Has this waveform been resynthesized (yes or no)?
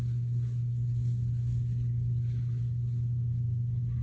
yes